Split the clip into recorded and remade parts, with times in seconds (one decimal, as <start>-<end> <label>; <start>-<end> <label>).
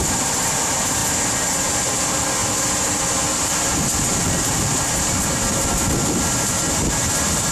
0.0-7.5 recorded